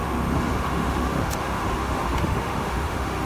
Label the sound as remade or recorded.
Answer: remade